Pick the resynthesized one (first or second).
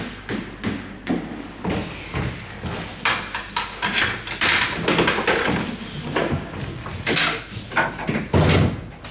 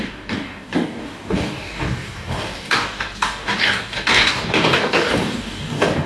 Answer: second